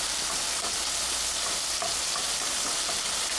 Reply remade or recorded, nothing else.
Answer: remade